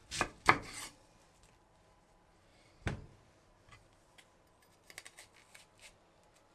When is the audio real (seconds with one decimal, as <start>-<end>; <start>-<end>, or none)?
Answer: 1.1-2.5; 3.4-6.5